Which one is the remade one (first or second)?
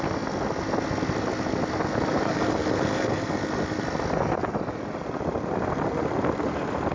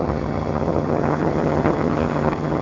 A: second